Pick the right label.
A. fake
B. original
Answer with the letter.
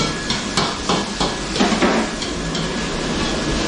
B